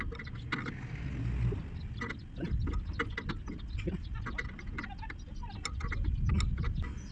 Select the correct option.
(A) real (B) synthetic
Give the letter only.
A